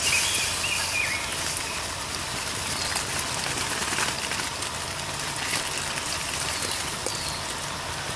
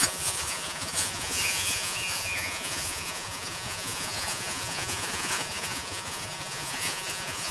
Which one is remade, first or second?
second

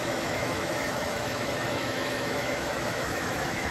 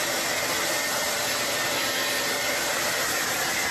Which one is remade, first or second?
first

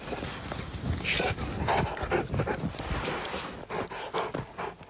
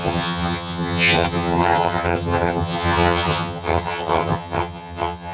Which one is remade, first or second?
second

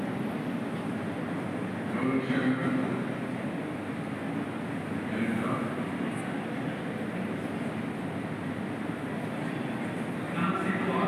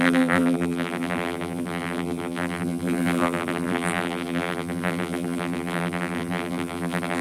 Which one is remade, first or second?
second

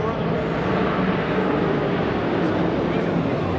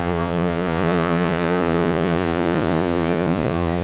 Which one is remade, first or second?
second